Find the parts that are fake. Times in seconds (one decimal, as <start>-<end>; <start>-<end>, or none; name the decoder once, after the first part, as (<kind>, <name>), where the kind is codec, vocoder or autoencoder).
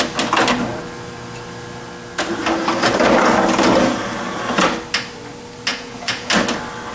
5.7-6.3 (vocoder, Vocos)